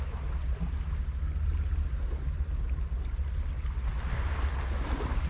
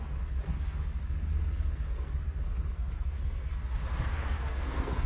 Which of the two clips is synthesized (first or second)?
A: second